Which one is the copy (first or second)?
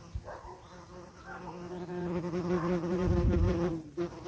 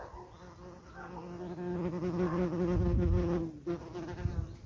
first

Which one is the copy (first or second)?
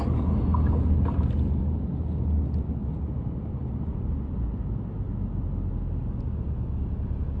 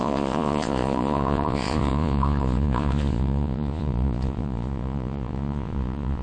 second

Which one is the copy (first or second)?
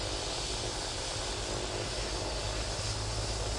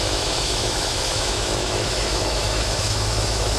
second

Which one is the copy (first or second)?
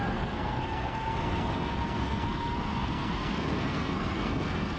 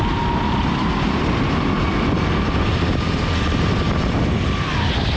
first